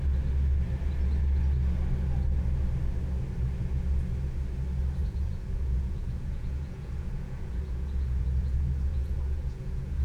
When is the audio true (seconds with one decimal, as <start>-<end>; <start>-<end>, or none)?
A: 0.0-5.0